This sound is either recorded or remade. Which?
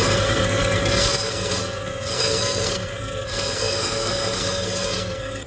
remade